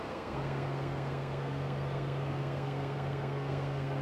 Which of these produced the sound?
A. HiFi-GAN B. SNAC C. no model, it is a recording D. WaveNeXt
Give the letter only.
B